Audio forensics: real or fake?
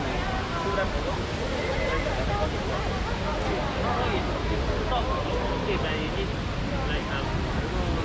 real